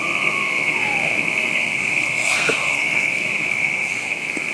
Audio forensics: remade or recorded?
remade